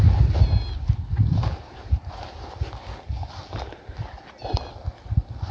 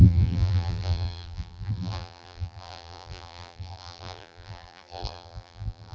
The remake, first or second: second